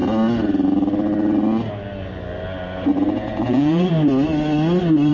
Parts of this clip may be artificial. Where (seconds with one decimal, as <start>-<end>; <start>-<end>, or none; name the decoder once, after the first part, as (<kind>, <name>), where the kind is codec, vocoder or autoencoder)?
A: 2.9-3.9 (vocoder, Vocos)